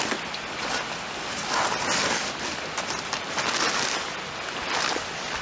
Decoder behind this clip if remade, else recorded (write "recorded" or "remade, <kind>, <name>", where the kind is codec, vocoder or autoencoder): recorded